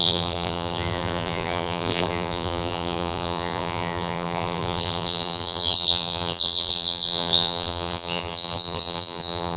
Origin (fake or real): fake